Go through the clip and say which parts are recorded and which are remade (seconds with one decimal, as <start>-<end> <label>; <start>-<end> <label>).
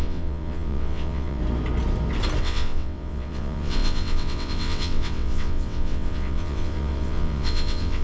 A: 0.0-1.4 remade; 1.4-2.4 recorded; 2.4-8.0 remade